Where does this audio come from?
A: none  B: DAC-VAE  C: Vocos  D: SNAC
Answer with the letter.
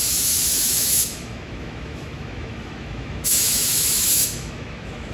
B